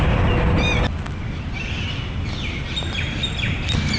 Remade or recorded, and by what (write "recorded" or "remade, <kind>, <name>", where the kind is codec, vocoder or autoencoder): recorded